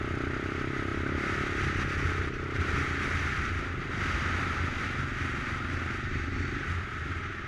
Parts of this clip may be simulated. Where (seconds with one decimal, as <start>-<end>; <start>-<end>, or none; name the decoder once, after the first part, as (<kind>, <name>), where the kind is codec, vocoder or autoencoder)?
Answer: none